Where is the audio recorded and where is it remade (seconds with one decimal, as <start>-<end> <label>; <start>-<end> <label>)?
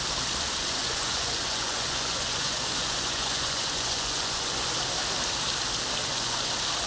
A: 0.0-0.6 recorded; 0.6-4.7 remade; 4.7-6.0 recorded; 6.0-6.5 remade; 6.5-6.9 recorded